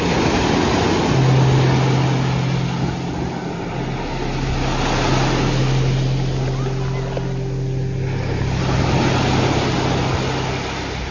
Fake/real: real